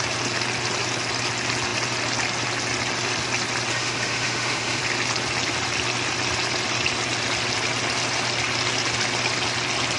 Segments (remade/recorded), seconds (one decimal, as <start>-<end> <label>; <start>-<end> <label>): 0.0-3.7 recorded; 3.7-4.8 remade; 4.8-10.0 recorded